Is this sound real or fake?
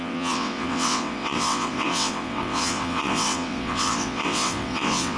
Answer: fake